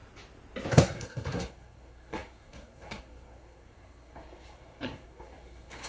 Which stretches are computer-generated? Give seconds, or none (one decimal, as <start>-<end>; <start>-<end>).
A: 0.7-5.9